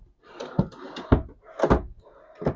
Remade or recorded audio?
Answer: recorded